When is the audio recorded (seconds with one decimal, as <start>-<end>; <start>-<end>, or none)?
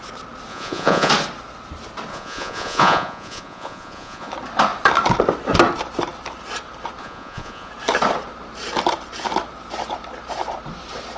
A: 0.0-0.5; 1.1-2.1; 4.3-7.0; 7.7-11.2